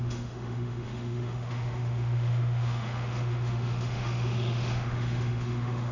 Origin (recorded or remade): remade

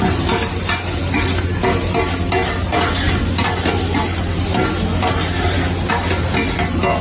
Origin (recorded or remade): recorded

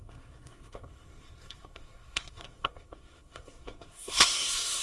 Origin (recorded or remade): remade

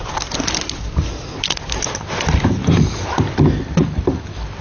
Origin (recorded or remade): recorded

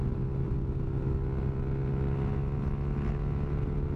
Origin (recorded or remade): recorded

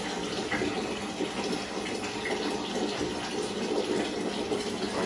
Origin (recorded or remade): recorded